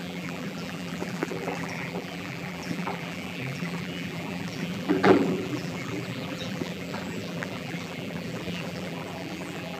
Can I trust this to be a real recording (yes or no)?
no